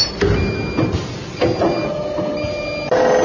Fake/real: real